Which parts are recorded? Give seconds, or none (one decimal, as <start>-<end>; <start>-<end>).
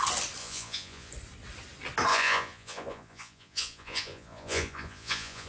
0.0-0.4; 1.1-2.1